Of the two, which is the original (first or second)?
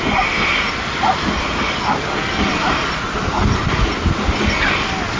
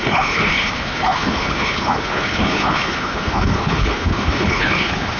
first